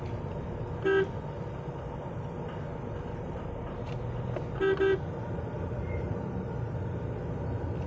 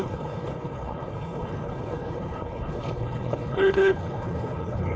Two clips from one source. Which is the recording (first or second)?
first